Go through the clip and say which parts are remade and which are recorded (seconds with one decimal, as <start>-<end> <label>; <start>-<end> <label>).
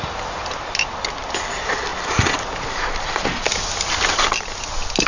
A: 0.0-5.1 recorded